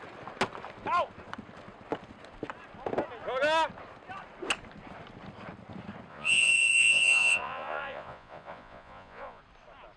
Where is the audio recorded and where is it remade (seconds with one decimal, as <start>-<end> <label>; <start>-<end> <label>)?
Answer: 0.0-6.1 recorded; 6.1-9.4 remade; 9.4-10.0 recorded